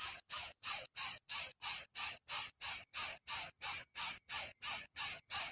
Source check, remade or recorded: recorded